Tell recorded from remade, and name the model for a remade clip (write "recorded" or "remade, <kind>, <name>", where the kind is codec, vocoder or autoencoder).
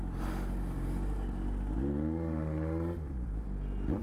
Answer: recorded